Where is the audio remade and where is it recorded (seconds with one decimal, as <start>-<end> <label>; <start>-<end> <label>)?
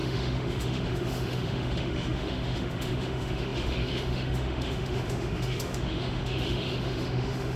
0.0-7.6 remade